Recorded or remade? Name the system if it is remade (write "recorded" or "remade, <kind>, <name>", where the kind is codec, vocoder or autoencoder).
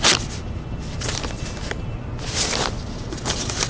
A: recorded